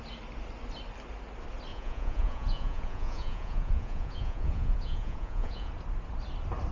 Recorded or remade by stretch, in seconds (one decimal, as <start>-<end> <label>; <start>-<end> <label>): 0.0-1.7 recorded; 1.7-5.7 remade; 5.7-6.7 recorded